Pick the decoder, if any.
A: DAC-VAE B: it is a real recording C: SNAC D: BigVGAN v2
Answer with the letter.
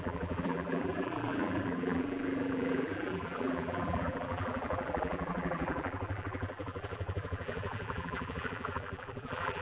D